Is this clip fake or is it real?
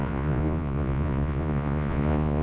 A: fake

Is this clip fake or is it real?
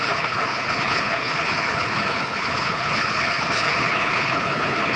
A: fake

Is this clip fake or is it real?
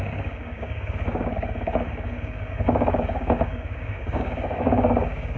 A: fake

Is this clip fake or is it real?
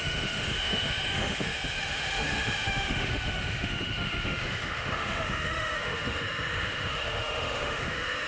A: fake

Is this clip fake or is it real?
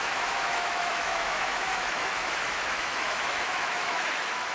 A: fake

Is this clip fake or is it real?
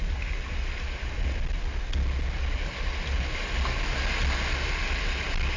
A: real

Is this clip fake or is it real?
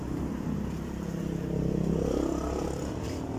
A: real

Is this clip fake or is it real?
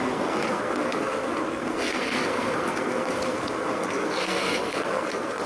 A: fake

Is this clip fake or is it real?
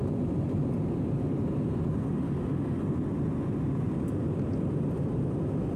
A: real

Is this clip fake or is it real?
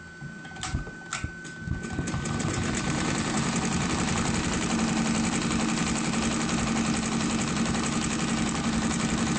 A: real